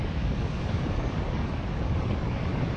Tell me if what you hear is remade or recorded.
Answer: remade